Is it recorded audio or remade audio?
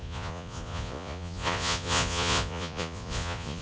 remade